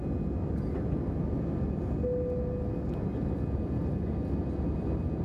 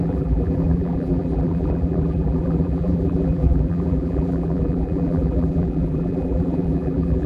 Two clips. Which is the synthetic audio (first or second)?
second